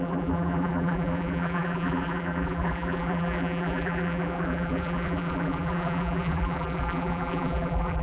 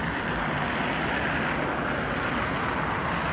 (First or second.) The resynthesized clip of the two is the first